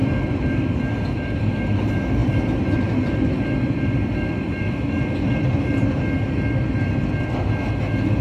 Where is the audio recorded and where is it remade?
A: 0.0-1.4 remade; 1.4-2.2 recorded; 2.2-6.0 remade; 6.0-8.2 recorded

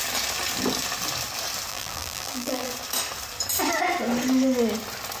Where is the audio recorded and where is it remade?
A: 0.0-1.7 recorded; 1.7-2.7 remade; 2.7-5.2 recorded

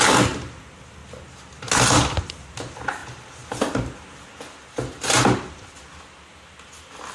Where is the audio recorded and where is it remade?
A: 0.0-7.1 recorded

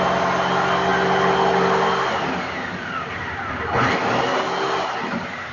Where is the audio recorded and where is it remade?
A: 0.0-5.5 recorded

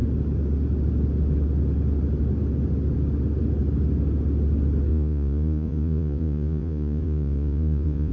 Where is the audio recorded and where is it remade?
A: 0.0-4.9 recorded; 4.9-8.1 remade